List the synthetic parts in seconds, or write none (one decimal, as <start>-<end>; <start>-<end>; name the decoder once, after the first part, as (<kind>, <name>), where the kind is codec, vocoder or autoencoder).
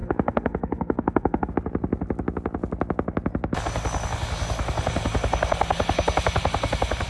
0.0-1.5 (codec, SNAC)